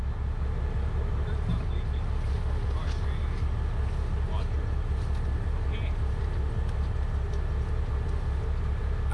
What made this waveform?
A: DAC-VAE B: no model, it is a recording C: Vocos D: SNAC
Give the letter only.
B